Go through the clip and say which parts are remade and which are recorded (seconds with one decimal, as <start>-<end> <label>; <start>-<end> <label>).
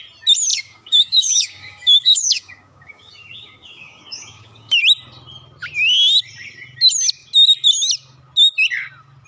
0.0-0.5 recorded; 0.5-4.8 remade; 4.8-9.3 recorded